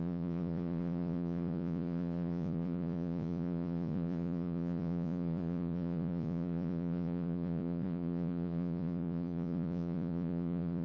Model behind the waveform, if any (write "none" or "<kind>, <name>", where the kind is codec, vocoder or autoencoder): vocoder, Vocos